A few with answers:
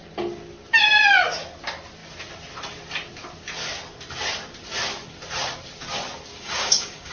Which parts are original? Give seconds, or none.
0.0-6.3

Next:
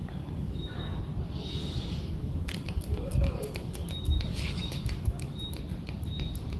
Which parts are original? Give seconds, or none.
1.0-1.6; 5.6-6.6

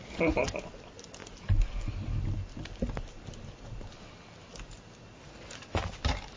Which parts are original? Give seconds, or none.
0.0-6.4